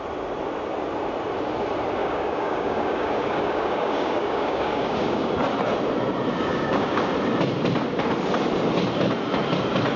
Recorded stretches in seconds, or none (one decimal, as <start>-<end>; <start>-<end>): 0.0-2.0; 5.3-6.5; 7.0-10.0